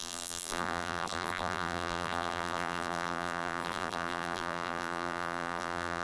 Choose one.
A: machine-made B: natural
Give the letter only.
A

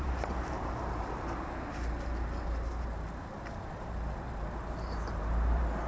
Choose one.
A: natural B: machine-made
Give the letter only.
B